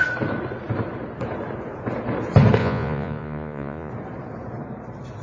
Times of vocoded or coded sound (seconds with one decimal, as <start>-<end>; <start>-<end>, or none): 2.6-3.9